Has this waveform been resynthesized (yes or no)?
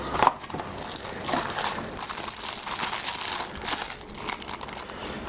no